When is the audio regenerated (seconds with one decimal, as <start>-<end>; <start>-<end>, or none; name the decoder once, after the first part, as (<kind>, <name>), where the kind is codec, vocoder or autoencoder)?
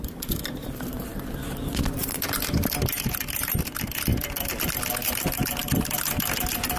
0.0-1.1 (vocoder, BigVGAN v2); 3.1-6.8